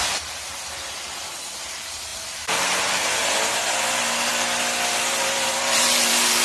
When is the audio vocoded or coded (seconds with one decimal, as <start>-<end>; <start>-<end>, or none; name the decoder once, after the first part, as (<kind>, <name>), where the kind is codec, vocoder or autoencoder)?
0.0-3.2 (vocoder, BigVGAN v2); 3.8-4.3; 4.9-6.4